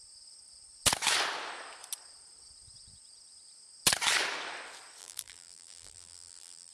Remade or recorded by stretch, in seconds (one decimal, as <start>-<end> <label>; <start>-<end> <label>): 0.0-5.0 recorded; 5.0-6.7 remade